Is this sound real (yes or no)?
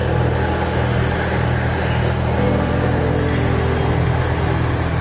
yes